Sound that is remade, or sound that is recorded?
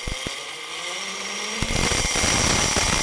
recorded